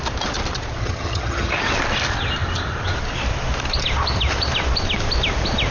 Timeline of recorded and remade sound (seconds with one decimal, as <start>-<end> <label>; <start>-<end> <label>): 0.0-0.8 recorded; 0.8-1.6 remade; 1.6-5.7 recorded